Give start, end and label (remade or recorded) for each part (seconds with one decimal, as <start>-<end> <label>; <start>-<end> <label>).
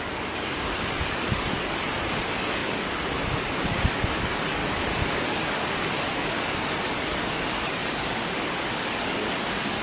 0.0-4.6 remade; 4.6-5.2 recorded; 5.2-9.8 remade